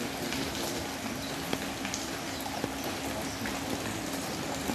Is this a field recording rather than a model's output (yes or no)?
yes